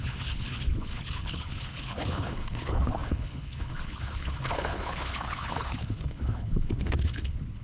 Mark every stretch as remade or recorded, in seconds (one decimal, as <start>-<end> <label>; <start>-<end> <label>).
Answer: 0.0-7.6 remade